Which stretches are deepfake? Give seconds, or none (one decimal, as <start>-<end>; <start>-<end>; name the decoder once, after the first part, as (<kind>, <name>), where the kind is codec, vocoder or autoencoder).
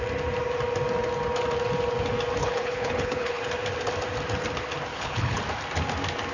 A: 2.4-3.4 (codec, HILCodec); 4.9-5.4